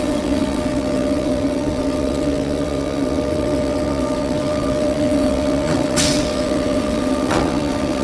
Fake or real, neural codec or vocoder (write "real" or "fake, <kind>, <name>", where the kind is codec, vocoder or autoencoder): fake, vocoder, WaveNeXt